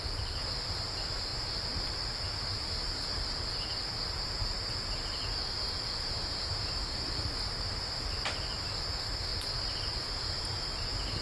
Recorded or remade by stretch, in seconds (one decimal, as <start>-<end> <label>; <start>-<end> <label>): 0.0-1.3 recorded; 1.3-2.0 remade; 2.0-9.3 recorded; 9.3-9.8 remade; 9.8-11.2 recorded